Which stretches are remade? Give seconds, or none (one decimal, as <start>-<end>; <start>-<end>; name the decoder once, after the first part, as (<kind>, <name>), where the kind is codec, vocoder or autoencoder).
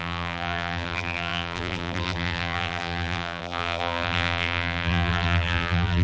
0.0-6.0 (vocoder, BigVGAN v2)